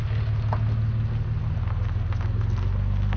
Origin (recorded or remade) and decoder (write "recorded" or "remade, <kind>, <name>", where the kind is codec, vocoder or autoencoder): recorded